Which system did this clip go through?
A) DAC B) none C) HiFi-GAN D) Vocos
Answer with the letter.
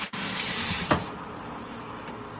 B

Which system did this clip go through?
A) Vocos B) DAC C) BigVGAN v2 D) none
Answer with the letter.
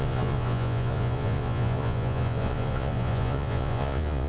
A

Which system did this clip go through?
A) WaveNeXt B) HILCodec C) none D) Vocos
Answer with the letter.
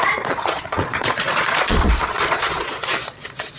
D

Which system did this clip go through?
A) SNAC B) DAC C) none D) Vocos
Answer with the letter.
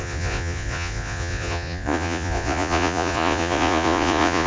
D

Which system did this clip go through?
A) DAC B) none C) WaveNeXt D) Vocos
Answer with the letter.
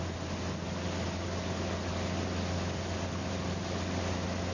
B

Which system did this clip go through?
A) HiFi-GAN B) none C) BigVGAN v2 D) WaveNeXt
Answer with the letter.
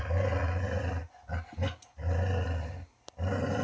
B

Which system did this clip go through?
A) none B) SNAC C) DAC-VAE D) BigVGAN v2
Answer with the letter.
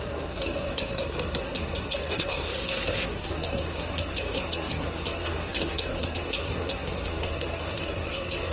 B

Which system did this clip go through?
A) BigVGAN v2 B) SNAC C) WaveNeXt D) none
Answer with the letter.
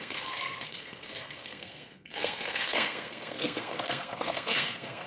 B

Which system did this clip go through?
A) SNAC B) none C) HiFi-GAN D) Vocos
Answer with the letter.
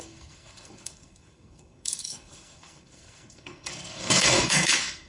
A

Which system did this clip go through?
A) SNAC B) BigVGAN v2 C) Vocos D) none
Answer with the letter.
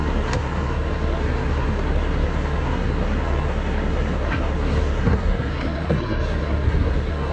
A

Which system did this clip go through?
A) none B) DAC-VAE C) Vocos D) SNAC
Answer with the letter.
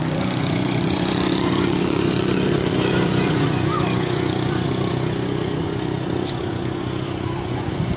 C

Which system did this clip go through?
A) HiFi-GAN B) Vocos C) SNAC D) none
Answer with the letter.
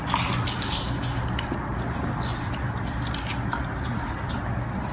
D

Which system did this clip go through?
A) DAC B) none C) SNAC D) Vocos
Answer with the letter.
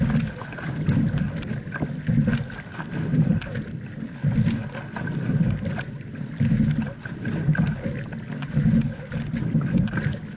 B